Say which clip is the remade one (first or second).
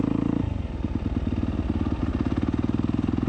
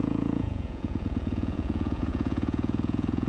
second